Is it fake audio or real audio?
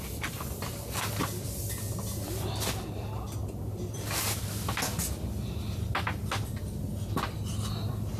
real